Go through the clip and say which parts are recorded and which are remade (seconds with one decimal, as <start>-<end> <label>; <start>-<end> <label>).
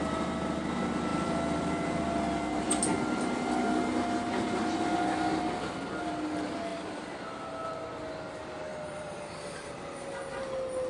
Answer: 0.0-1.1 recorded; 1.1-2.0 remade; 2.0-6.7 recorded; 6.7-7.7 remade; 7.7-8.7 recorded; 8.7-9.7 remade; 9.7-10.9 recorded